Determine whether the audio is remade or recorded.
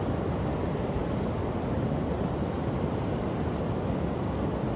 recorded